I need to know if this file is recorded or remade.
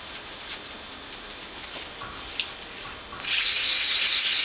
recorded